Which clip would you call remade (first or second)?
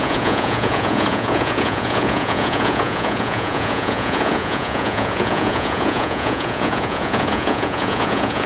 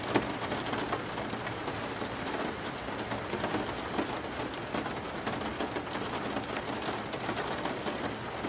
first